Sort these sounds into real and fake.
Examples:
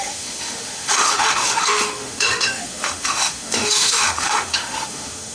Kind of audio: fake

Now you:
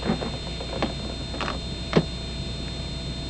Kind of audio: real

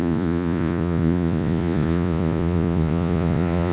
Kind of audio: fake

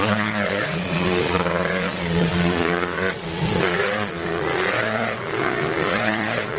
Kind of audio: fake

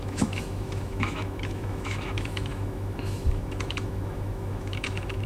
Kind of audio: fake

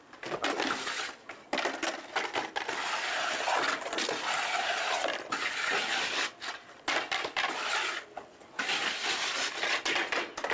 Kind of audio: real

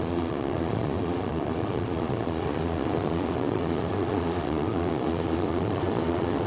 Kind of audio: fake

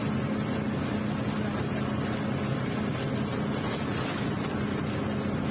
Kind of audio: real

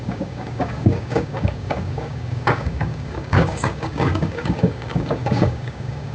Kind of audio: fake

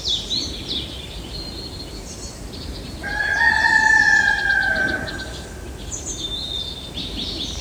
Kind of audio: real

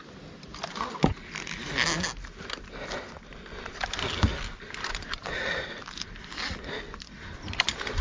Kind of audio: real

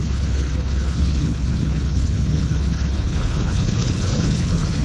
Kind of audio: fake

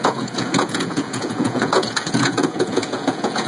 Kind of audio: fake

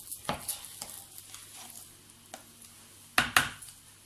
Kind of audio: real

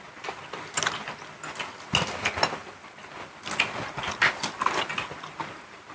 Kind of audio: real